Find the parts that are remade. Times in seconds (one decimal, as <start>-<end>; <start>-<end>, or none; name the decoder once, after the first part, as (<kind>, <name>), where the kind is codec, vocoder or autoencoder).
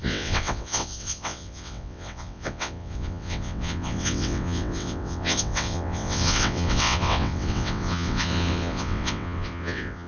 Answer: 0.0-10.1 (vocoder, WaveNeXt)